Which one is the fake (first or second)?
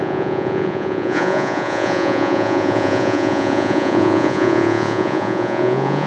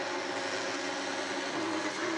first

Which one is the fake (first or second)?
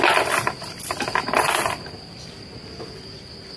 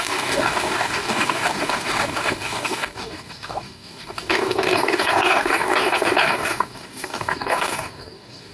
second